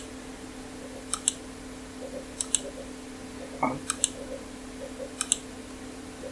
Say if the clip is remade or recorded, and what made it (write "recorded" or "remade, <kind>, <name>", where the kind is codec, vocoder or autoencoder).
recorded